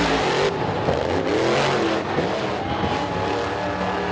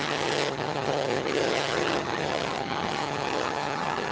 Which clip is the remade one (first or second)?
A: second